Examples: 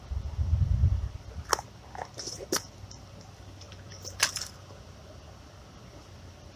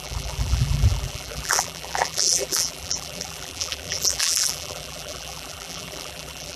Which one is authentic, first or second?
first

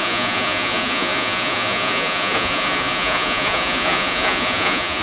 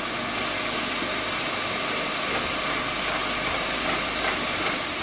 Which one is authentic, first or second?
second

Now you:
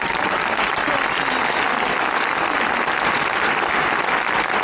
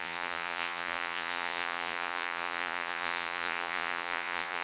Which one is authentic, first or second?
first